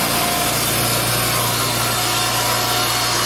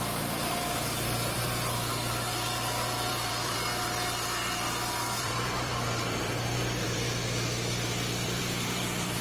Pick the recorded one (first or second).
first